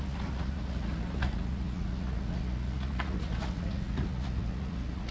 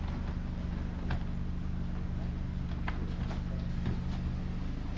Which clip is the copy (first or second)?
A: first